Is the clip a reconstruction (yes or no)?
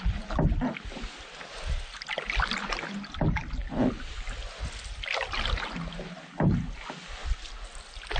no